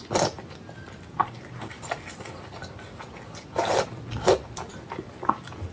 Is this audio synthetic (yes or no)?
no